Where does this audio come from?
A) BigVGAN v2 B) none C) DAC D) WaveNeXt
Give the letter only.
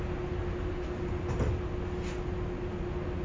B